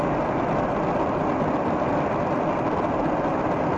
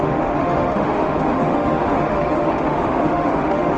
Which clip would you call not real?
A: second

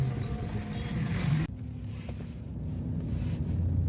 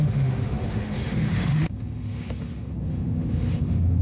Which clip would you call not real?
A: second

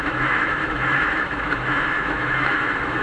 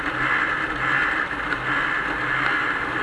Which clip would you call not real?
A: first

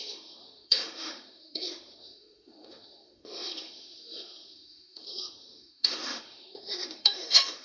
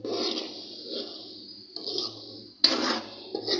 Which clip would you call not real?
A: first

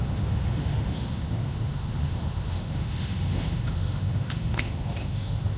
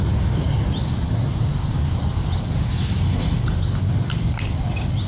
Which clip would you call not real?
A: first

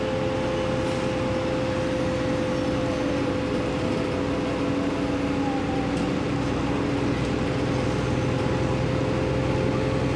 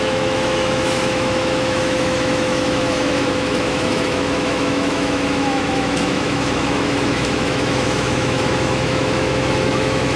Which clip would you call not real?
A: second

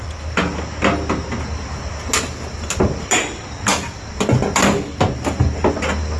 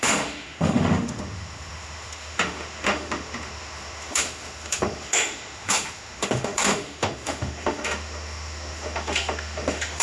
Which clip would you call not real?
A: second